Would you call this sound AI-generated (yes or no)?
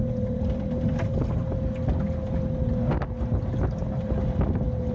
no